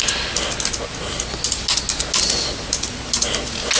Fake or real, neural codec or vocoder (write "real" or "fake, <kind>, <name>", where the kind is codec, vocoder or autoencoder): real